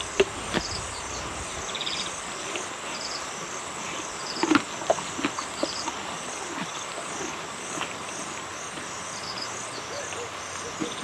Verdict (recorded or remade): recorded